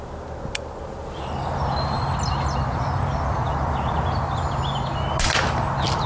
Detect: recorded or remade recorded